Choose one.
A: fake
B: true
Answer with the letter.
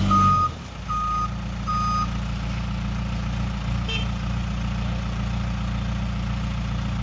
B